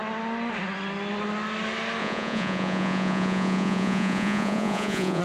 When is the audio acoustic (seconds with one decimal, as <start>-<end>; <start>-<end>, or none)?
0.0-2.0